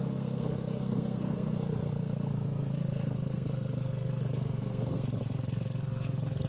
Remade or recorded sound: remade